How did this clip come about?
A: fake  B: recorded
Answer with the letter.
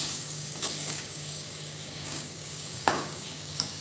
A